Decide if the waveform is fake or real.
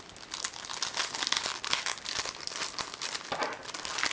real